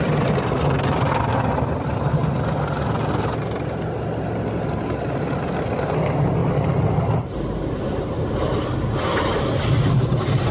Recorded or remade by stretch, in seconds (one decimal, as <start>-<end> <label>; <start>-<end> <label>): 0.0-10.5 recorded